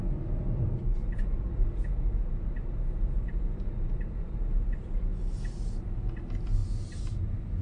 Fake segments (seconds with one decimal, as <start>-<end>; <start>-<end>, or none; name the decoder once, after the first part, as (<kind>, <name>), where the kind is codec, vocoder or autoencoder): none